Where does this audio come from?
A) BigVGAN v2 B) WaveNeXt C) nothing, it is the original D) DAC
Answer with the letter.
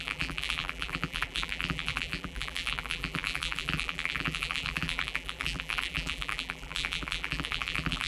A